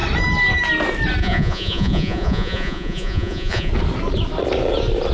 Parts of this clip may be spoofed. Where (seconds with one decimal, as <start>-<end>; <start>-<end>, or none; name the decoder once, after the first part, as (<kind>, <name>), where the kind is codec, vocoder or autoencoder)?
1.2-3.7 (vocoder, Vocos)